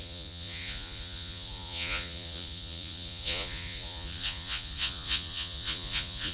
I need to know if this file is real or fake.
fake